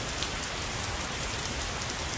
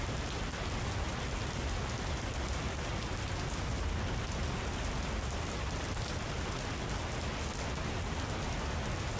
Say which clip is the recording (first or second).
second